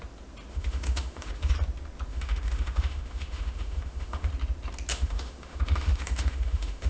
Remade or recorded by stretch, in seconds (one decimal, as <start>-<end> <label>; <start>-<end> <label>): 0.0-0.5 recorded; 0.5-1.5 remade; 1.5-2.1 recorded; 2.1-4.3 remade; 4.3-4.9 recorded; 4.9-6.9 remade

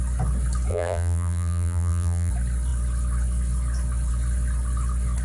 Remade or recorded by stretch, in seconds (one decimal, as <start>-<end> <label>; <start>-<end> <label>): 0.0-0.7 recorded; 0.7-2.3 remade; 2.3-5.2 recorded

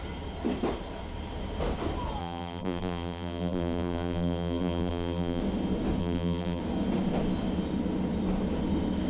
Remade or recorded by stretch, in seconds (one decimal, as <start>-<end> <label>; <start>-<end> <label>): 0.0-2.2 recorded; 2.2-5.4 remade; 5.4-6.0 recorded; 6.0-6.6 remade; 6.6-9.1 recorded

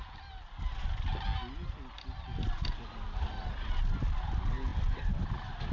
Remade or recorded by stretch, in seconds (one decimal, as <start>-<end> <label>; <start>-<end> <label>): 0.0-4.7 recorded; 4.7-5.7 remade